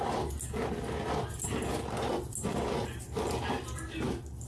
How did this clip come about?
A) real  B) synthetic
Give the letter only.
A